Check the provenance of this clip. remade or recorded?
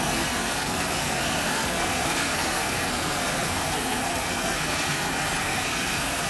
remade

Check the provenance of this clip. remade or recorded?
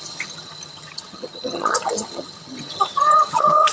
remade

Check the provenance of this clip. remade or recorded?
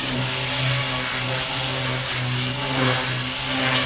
recorded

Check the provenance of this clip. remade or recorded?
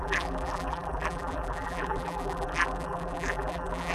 remade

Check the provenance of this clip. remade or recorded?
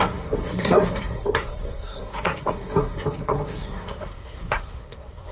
remade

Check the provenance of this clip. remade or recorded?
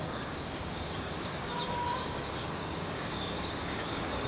remade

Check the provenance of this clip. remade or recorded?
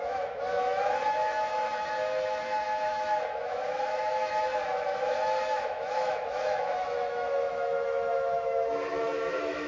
remade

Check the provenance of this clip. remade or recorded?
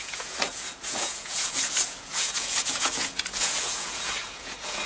remade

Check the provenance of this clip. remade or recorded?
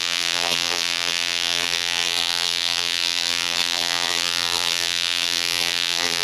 remade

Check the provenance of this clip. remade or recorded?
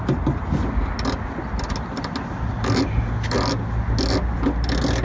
recorded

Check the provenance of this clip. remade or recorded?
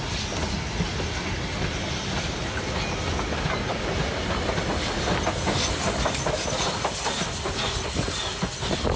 recorded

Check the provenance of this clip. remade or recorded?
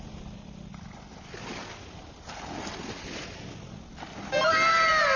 recorded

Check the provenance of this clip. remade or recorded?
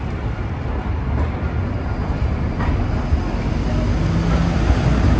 recorded